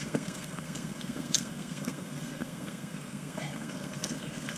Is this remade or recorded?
remade